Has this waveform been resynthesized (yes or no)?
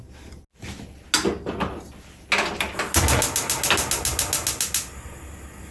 no